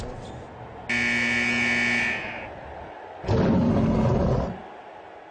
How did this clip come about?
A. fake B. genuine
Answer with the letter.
B